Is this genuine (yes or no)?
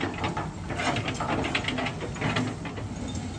yes